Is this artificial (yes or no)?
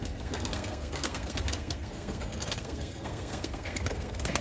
yes